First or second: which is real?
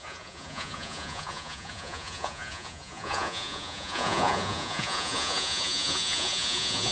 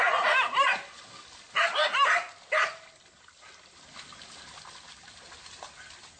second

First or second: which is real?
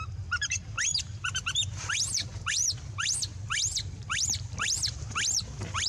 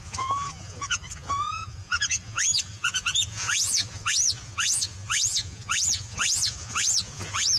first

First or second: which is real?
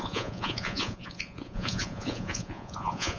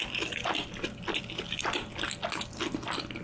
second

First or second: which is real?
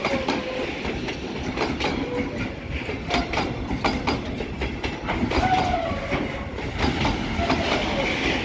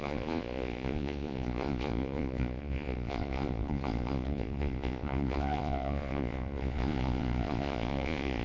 first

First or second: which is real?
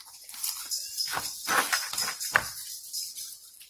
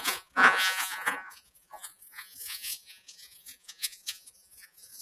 first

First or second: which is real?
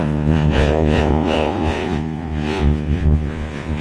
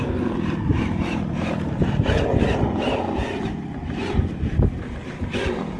second